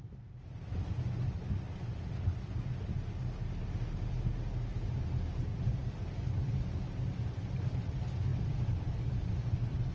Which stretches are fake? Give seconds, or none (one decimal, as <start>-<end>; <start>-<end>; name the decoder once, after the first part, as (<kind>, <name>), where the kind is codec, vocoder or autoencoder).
5.5-7.3 (vocoder, BigVGAN v2); 8.3-9.3